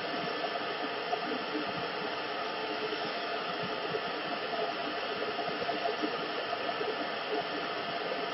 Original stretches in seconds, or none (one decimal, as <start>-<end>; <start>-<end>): 0.0-2.6; 3.6-8.3